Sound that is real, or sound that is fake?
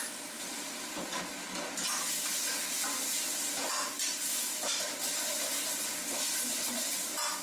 real